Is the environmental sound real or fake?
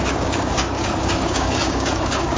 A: fake